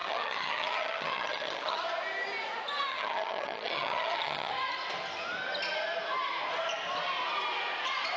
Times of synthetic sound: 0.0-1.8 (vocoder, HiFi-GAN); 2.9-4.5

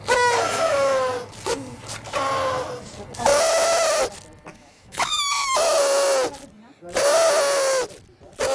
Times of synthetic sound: 0.5-1.1 (autoencoder, DAC-VAE); 3.3-4.0; 4.5-5.8

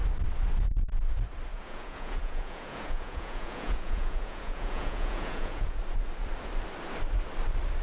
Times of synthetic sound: 1.5-5.8 (vocoder, Vocos)

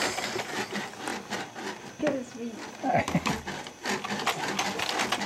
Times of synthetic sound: none

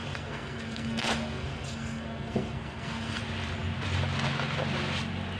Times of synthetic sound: 0.0-3.2 (codec, SNAC)

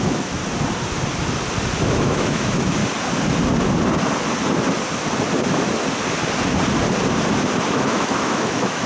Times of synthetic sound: 0.0-0.4 (autoencoder, DAC-VAE); 1.8-2.8; 7.7-8.9

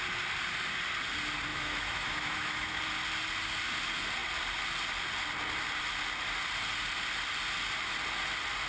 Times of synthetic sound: 1.5-2.8 (autoencoder, DAC-VAE)